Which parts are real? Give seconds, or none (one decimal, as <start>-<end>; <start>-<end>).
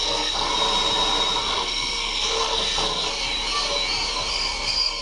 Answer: 0.5-1.4; 3.1-4.3